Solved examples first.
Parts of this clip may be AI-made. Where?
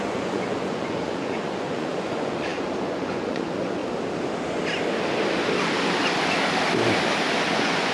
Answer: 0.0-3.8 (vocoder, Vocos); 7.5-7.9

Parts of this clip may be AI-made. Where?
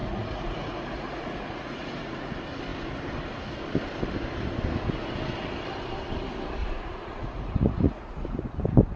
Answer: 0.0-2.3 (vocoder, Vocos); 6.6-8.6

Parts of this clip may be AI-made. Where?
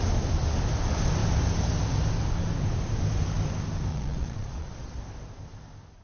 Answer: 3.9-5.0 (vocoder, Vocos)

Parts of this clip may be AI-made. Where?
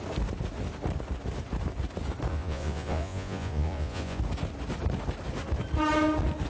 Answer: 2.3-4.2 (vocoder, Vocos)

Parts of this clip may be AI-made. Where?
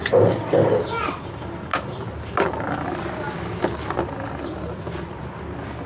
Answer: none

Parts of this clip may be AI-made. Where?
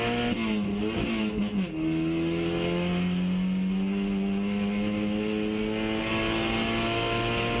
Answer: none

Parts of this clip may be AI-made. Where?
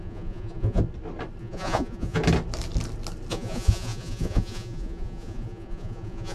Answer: 0.0-0.8 (vocoder, Vocos); 1.4-2.2; 3.3-6.3